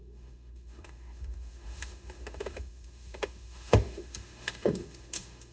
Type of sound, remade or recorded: remade